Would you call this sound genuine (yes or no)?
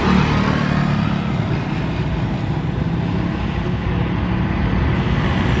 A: yes